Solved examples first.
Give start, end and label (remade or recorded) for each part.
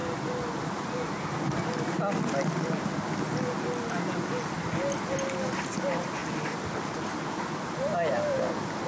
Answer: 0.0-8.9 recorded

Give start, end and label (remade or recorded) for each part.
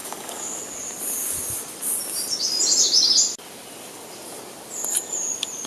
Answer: 0.0-0.6 remade; 0.6-5.7 recorded